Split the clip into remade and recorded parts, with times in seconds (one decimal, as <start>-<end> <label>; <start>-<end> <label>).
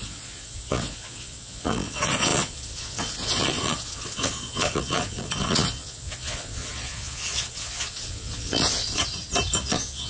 0.0-9.0 remade; 9.0-9.6 recorded; 9.6-10.1 remade